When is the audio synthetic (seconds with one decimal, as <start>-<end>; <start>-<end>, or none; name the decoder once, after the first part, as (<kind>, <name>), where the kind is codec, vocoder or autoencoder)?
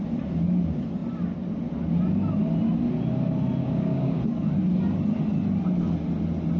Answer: 3.6-4.2 (codec, DAC)